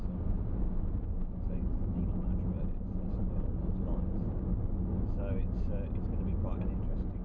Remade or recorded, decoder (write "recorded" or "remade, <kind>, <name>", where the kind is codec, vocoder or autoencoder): recorded